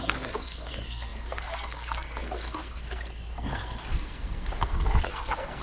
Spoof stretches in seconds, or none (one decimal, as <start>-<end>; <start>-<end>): 0.0-5.6